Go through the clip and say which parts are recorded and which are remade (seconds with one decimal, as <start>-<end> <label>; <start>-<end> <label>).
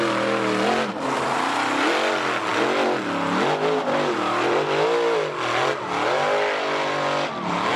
0.0-7.8 recorded